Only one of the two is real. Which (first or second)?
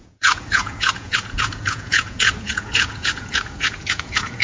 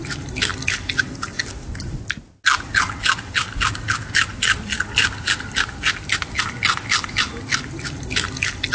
second